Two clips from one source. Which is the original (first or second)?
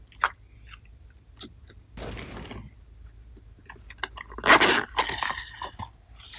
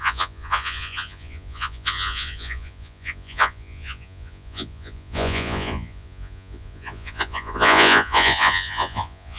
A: first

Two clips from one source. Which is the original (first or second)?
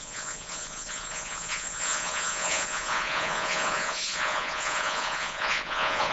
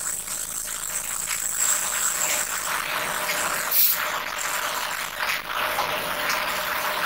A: second